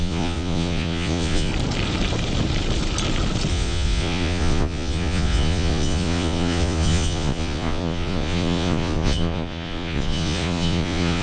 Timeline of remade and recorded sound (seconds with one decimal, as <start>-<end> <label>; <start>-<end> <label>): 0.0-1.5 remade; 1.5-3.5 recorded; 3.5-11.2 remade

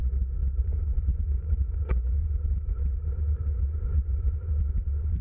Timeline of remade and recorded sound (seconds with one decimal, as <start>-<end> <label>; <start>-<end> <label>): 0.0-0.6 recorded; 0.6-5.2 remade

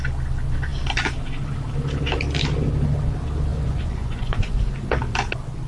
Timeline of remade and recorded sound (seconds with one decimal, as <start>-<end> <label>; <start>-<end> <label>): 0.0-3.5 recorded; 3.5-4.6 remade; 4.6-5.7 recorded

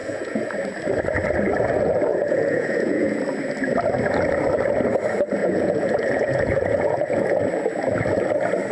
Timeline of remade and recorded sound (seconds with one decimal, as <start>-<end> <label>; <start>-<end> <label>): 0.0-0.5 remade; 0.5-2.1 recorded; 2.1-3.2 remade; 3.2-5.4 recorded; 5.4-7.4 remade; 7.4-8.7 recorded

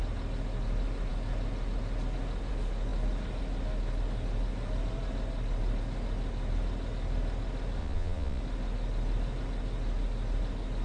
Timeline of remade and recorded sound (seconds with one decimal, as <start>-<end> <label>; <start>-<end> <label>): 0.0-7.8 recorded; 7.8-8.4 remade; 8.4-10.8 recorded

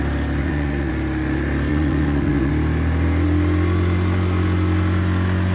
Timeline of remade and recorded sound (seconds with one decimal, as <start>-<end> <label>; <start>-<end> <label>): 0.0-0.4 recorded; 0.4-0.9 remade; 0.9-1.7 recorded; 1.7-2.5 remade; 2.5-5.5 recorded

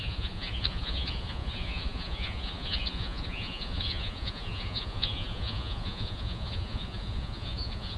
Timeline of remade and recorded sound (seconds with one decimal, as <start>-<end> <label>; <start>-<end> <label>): 0.0-8.0 remade